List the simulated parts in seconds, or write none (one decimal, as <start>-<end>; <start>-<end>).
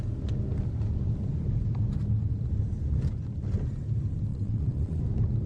4.3-5.0